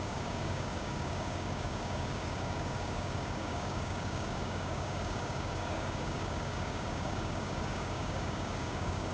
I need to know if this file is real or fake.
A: fake